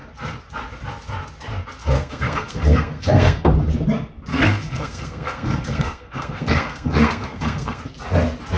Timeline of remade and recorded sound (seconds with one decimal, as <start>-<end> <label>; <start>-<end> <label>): 0.0-1.8 recorded; 1.8-3.5 remade; 3.5-4.3 recorded; 4.3-7.8 remade; 7.8-8.6 recorded

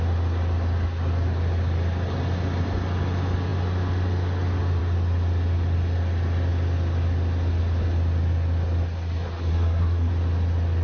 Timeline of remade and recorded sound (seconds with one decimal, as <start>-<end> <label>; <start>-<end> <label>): 0.0-9.5 recorded; 9.5-10.1 remade; 10.1-10.8 recorded

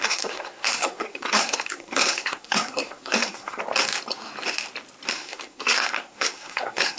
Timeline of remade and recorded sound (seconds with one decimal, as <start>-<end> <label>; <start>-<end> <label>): 0.0-3.6 remade; 3.6-5.1 recorded; 5.1-7.0 remade

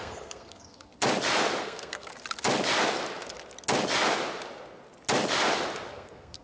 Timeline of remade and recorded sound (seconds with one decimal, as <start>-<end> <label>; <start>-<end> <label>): 0.0-0.9 remade; 0.9-1.6 recorded; 1.6-2.1 remade; 2.1-5.9 recorded; 5.9-6.4 remade

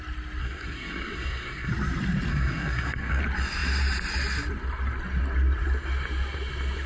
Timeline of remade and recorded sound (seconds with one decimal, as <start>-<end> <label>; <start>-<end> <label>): 0.0-0.4 recorded; 0.4-1.7 remade; 1.7-2.3 recorded; 2.3-3.2 remade; 3.2-6.9 recorded